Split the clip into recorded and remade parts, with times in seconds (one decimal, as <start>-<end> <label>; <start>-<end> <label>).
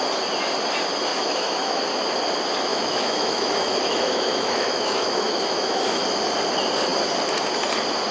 0.0-1.1 recorded; 1.1-1.8 remade; 1.8-2.7 recorded; 2.7-6.0 remade; 6.0-8.1 recorded